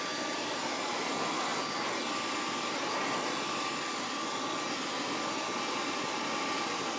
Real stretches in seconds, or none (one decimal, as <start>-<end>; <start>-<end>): 0.0-7.0